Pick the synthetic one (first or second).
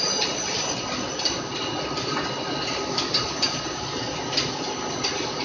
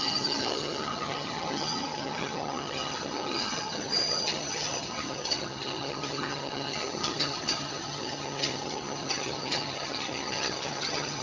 second